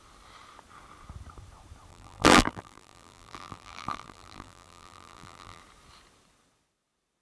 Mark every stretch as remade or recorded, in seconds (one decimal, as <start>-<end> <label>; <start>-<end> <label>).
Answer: 0.0-1.9 recorded; 1.9-5.6 remade; 5.6-7.2 recorded